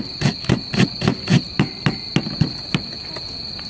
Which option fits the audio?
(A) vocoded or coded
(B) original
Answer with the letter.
B